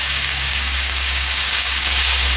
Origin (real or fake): fake